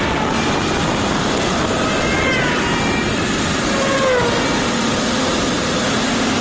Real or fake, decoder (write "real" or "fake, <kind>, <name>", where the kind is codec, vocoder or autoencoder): real